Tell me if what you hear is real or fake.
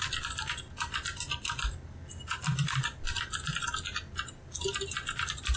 real